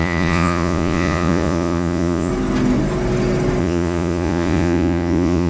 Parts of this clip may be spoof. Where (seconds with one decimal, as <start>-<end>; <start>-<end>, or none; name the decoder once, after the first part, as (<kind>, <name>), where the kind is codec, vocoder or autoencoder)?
0.0-2.3 (vocoder, Vocos); 3.6-5.5